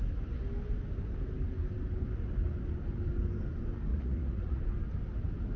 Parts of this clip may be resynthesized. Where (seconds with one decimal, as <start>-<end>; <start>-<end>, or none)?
3.9-4.6